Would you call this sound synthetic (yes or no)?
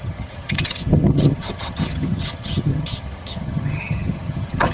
yes